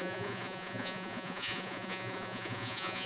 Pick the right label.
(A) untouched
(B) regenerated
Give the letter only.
B